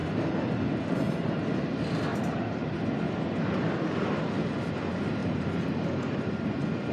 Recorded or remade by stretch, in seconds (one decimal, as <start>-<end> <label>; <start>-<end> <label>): 0.0-2.1 recorded; 2.1-2.8 remade; 2.8-3.6 recorded; 3.6-4.2 remade; 4.2-5.2 recorded; 5.2-6.2 remade; 6.2-6.9 recorded